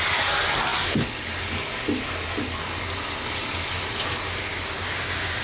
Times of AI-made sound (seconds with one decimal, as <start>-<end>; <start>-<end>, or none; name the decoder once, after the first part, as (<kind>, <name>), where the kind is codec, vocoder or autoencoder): 4.5-5.4 (codec, DAC)